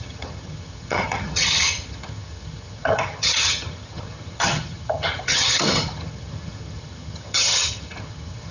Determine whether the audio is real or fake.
fake